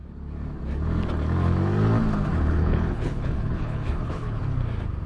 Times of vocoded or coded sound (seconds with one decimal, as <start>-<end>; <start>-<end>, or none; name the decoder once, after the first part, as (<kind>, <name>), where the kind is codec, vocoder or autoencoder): 2.3-4.4 (codec, HILCodec)